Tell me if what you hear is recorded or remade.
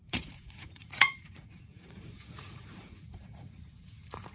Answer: remade